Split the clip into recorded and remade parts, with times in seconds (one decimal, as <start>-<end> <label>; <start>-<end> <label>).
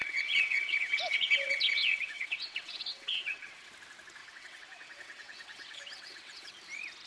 0.0-3.7 remade; 3.7-4.2 recorded; 4.2-6.5 remade; 6.5-7.1 recorded